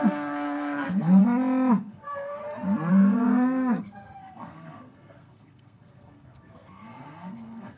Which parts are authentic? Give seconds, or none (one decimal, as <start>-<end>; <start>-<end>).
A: 1.2-1.7; 2.4-2.9